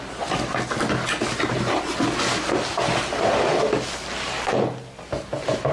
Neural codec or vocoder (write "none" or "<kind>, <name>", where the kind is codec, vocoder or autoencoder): none